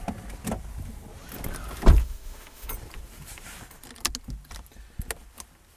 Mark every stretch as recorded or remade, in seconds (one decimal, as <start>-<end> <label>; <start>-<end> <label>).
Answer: 0.0-2.0 recorded; 2.0-2.7 remade; 2.7-5.8 recorded